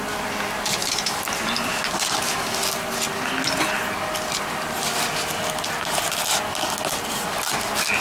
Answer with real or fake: real